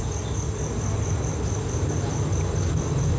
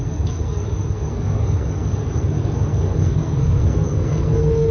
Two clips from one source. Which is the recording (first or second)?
first